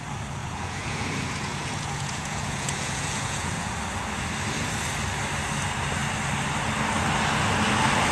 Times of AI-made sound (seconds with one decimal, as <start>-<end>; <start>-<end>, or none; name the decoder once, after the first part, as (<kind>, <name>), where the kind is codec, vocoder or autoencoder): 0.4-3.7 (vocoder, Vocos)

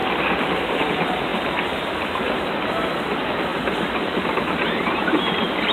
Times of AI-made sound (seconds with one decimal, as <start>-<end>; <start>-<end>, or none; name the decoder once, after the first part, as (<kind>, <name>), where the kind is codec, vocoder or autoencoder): 0.6-5.7 (vocoder, BigVGAN v2)

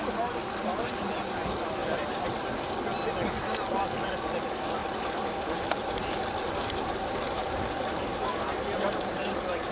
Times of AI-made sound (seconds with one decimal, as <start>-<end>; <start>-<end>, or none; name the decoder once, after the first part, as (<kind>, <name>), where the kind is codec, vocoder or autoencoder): 1.8-2.4 (vocoder, BigVGAN v2); 4.8-9.7